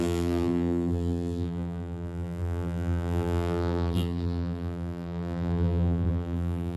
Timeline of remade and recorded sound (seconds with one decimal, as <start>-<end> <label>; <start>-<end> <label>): 0.0-6.8 remade